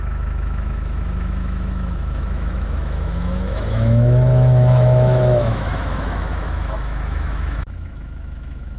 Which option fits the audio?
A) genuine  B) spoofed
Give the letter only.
B